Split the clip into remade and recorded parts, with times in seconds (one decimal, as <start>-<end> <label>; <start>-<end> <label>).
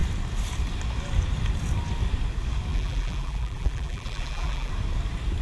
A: 0.0-2.7 recorded; 2.7-4.7 remade; 4.7-5.4 recorded